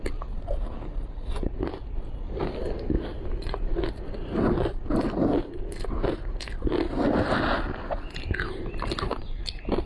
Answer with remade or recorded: recorded